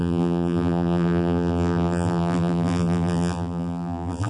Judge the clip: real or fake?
fake